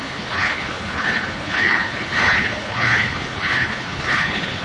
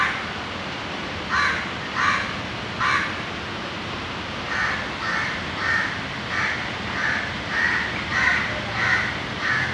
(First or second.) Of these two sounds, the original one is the second